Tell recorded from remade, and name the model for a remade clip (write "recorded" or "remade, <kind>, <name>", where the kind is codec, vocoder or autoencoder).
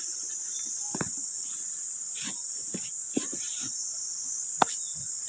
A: recorded